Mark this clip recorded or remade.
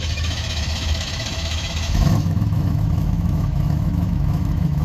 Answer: remade